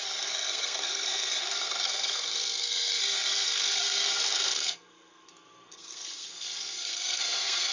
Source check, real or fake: fake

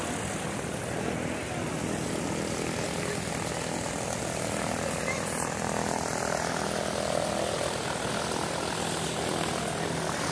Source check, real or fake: real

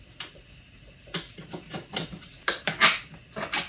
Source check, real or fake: fake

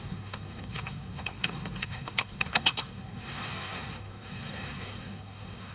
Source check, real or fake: fake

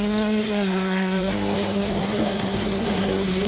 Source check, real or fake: fake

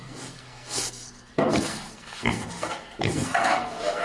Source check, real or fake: fake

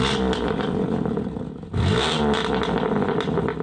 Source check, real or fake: real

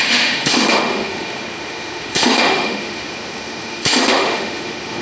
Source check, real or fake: fake